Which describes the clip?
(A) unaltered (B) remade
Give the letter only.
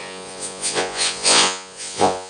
B